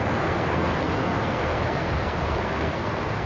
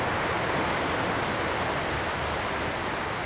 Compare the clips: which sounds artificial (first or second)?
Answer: first